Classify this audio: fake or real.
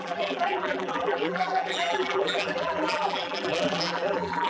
fake